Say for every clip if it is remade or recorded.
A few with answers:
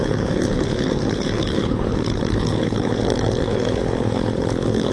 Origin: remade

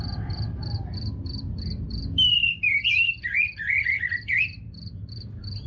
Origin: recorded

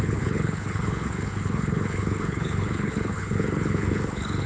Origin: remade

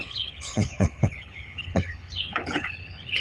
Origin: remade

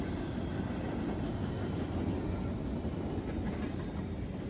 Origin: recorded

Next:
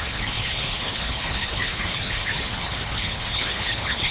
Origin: remade